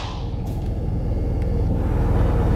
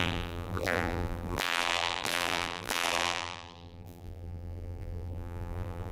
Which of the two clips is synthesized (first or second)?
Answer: second